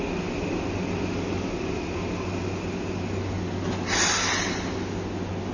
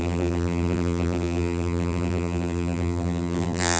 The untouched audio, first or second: first